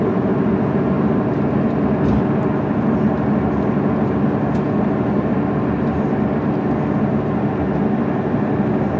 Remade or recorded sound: recorded